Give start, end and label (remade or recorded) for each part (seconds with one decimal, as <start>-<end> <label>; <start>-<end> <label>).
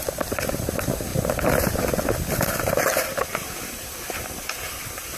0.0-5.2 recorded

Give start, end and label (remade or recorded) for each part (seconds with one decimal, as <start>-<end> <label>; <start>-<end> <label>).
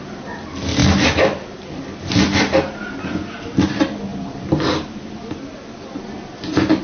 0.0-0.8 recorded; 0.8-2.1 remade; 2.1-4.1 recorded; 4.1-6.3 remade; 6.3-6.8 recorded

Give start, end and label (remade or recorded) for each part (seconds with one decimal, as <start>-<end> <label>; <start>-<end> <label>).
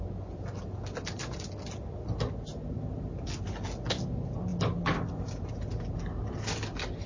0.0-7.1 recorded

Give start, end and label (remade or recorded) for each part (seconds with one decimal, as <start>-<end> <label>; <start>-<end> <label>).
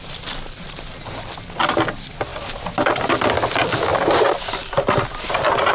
0.0-2.3 recorded; 2.3-2.9 remade; 2.9-3.9 recorded; 3.9-5.3 remade; 5.3-5.7 recorded